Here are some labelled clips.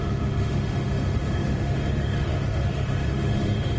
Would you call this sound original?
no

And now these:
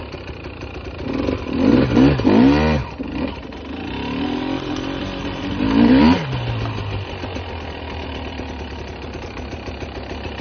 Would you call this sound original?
yes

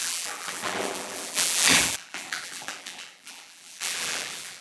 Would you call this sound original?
no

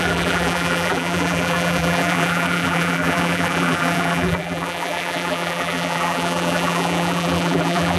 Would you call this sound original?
no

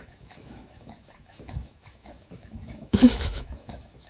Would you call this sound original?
no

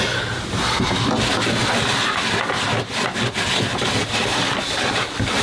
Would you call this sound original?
yes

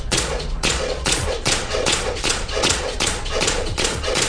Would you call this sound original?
no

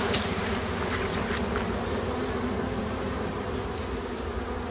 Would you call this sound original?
yes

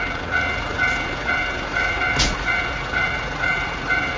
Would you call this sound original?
no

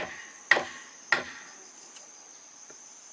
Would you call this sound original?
yes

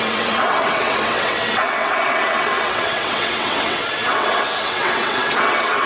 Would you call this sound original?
no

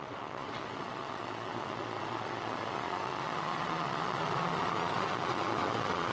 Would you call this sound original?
no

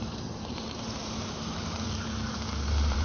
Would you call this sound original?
no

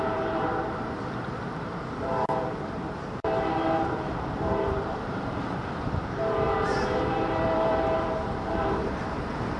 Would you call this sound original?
no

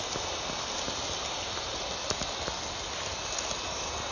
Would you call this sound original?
yes